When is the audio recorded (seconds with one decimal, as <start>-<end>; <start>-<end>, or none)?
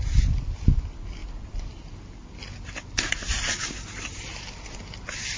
0.0-5.4